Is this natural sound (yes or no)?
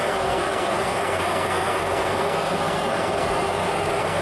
no